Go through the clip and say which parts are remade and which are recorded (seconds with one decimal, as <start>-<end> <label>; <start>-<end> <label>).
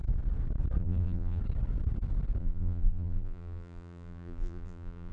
0.0-0.8 recorded; 0.8-1.4 remade; 1.4-2.4 recorded; 2.4-5.1 remade